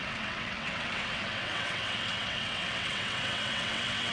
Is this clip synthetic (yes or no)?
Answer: yes